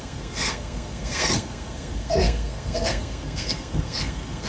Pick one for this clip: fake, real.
fake